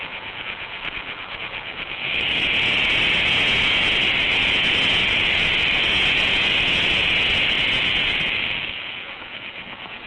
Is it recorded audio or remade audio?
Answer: remade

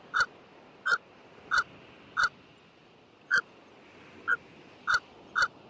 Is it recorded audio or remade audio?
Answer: recorded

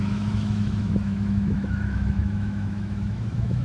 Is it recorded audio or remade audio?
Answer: remade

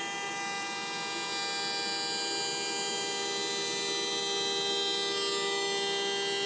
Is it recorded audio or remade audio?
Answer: recorded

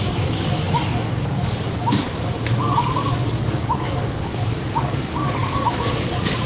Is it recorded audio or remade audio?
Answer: remade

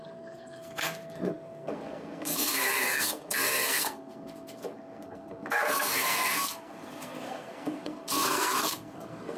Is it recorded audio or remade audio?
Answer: remade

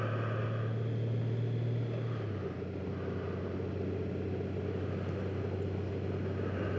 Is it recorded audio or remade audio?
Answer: recorded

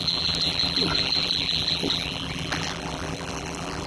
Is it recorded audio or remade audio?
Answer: remade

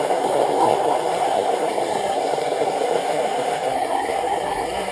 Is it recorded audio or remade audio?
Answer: remade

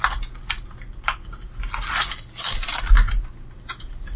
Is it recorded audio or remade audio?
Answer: recorded